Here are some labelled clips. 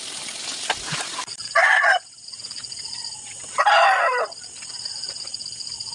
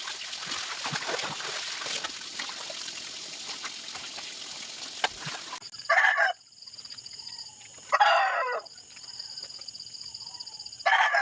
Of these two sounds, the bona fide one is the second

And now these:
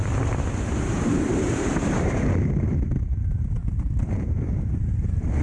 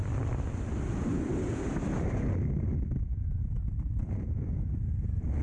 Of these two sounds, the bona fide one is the second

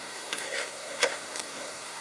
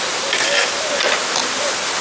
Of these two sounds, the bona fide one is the second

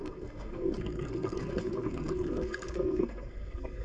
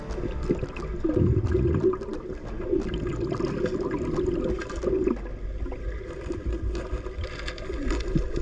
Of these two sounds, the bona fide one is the second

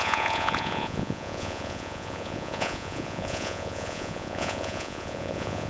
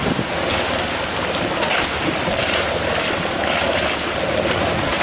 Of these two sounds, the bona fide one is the second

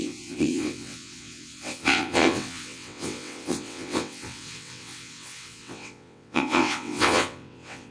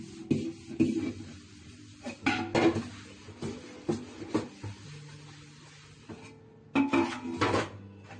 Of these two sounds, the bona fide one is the second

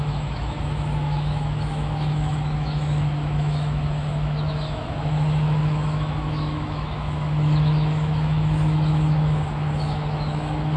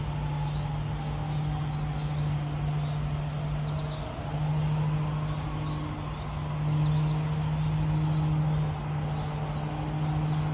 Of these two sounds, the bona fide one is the second